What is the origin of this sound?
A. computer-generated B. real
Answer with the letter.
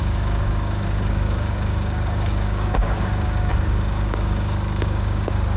A